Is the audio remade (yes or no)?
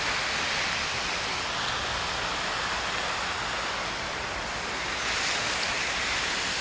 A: no